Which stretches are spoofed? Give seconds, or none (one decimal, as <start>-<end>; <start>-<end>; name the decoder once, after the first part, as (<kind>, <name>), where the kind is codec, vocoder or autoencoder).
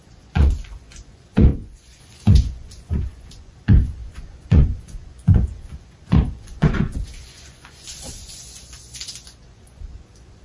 0.0-10.4 (vocoder, Vocos)